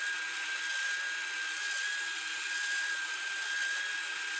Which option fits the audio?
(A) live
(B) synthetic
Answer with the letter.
A